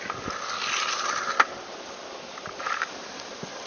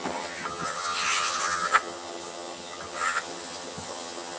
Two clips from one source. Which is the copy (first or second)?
second